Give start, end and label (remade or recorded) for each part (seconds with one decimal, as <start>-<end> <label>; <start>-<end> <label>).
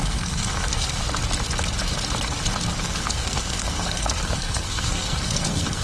0.0-1.0 remade; 1.0-2.8 recorded; 2.8-5.8 remade